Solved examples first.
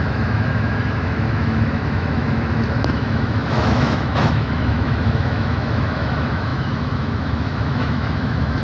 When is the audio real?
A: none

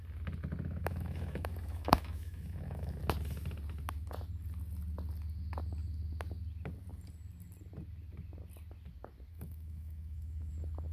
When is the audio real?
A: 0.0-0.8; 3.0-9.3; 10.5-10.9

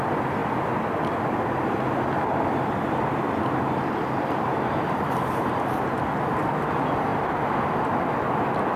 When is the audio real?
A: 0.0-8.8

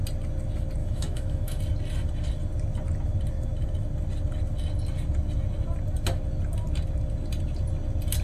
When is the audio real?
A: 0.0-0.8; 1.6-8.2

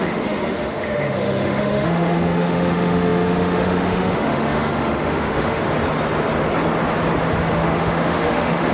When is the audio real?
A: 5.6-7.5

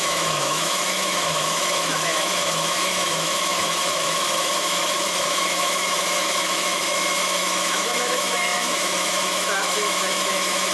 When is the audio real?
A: none

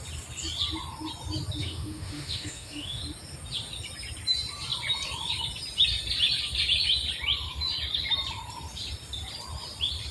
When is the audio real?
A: 0.0-1.6; 3.0-10.1